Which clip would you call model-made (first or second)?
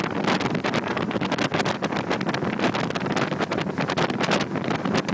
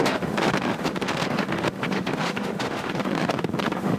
second